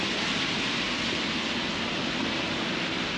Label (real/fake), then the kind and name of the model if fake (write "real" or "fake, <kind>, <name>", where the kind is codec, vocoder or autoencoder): real